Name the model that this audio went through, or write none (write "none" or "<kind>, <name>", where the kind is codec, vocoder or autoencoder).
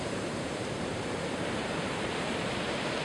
vocoder, BigVGAN v2